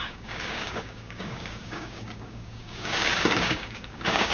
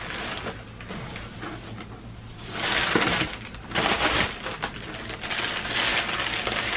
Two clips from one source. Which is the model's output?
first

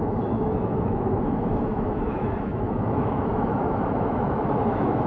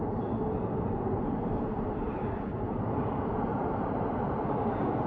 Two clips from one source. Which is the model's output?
first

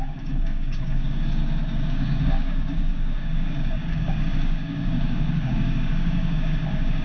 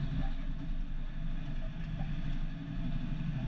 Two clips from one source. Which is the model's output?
first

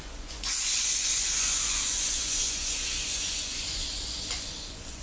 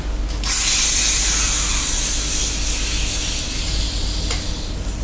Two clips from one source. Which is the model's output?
first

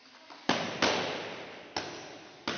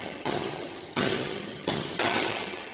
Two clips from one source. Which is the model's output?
second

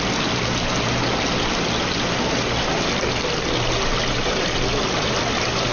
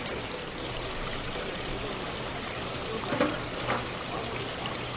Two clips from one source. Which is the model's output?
second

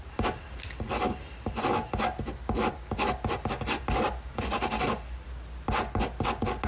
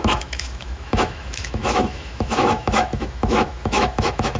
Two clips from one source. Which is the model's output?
second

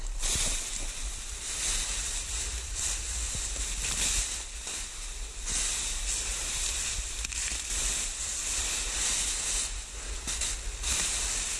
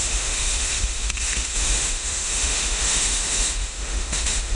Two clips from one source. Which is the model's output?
second